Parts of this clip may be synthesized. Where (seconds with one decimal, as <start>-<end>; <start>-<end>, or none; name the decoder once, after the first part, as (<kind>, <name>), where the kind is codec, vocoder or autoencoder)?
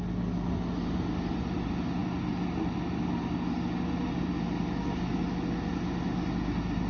none